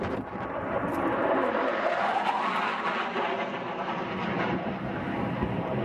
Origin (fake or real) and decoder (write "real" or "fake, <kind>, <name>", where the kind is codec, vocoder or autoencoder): real